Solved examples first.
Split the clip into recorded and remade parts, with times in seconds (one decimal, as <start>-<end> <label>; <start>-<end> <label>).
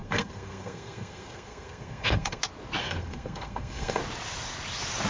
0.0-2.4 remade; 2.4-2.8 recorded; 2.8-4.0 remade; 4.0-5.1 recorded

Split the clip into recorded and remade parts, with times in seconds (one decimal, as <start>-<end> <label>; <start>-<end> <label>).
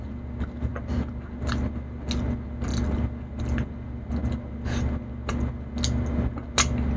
0.0-7.0 recorded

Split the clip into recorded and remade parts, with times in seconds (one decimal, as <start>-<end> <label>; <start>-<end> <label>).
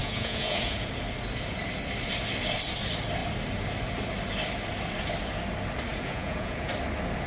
0.0-0.9 remade; 0.9-5.9 recorded; 5.9-6.7 remade; 6.7-7.3 recorded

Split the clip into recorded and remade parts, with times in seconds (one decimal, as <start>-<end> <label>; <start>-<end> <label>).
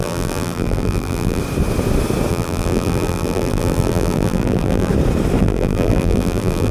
0.0-1.4 remade; 1.4-2.3 recorded; 2.3-4.9 remade; 4.9-5.4 recorded; 5.4-6.7 remade